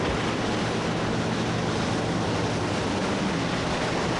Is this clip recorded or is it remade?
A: recorded